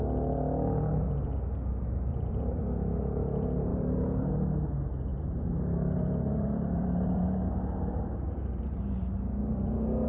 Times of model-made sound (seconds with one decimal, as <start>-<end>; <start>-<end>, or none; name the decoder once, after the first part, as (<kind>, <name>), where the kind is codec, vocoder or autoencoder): 2.1-2.6 (vocoder, BigVGAN v2); 3.7-4.3; 5.1-8.8

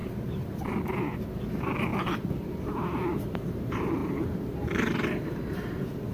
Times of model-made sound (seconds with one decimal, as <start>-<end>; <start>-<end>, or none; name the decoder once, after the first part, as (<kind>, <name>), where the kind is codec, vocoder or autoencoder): 0.0-1.9 (vocoder, BigVGAN v2); 2.7-6.1

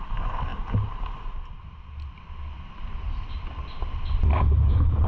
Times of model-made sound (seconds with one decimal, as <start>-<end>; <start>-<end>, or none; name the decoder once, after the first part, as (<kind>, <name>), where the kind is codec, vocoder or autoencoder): 0.0-0.5 (vocoder, BigVGAN v2); 2.7-5.1

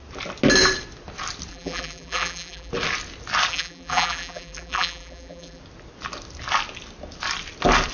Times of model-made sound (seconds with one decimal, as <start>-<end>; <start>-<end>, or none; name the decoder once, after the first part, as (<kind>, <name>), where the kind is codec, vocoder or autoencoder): 1.5-2.7 (vocoder, BigVGAN v2); 3.5-5.6